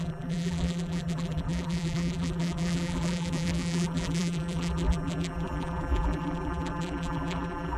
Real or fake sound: fake